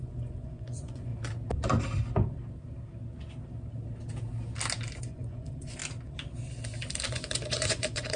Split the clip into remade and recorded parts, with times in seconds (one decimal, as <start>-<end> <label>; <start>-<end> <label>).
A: 0.0-1.1 remade; 1.1-5.0 recorded; 5.0-5.8 remade; 5.8-7.1 recorded; 7.1-8.2 remade